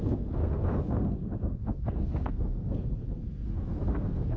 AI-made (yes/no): yes